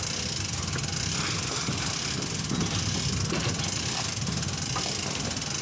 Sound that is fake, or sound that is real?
real